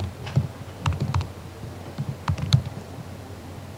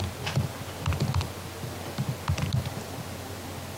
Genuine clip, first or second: second